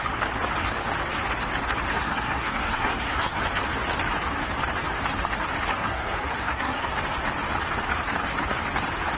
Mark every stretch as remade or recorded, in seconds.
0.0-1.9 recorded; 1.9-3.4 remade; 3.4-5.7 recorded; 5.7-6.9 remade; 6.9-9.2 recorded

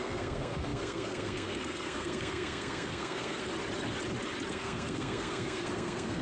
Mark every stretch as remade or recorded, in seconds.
0.0-3.5 remade; 3.5-4.5 recorded; 4.5-6.2 remade

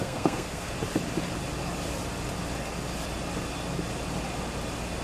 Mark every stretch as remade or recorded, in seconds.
0.0-0.7 remade; 0.7-5.0 recorded